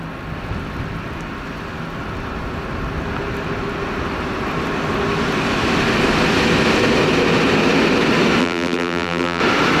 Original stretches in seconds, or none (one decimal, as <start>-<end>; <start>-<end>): 0.0-8.4; 9.4-9.8